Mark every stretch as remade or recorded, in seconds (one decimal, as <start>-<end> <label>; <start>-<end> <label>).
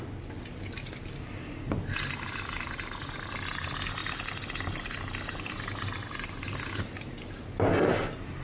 0.0-8.4 recorded